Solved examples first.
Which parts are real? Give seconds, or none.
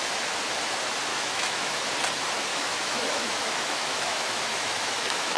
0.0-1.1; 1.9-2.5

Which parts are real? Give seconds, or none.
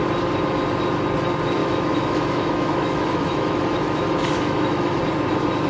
0.0-1.6; 5.0-5.7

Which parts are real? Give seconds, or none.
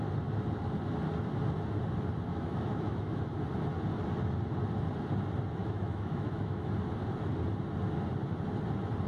0.0-2.3; 3.2-5.6; 6.7-9.1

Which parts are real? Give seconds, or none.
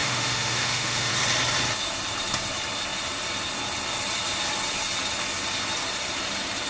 1.1-6.7